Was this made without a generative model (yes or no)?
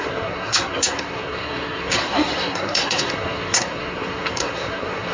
no